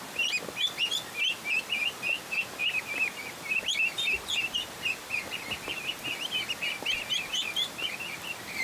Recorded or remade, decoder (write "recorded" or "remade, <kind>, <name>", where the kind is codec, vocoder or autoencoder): recorded